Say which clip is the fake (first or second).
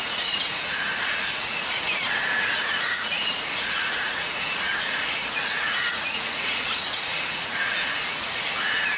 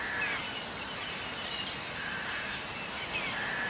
first